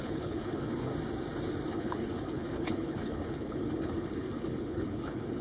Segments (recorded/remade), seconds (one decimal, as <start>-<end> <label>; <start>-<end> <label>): 0.0-0.9 remade; 0.9-1.7 recorded; 1.7-5.4 remade